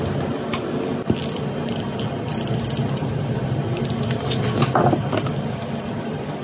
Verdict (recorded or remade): recorded